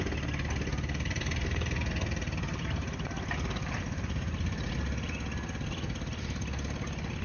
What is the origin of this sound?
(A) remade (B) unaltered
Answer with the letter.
B